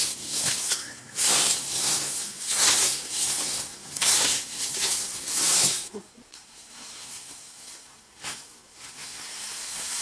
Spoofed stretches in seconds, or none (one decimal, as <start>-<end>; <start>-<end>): 0.0-10.0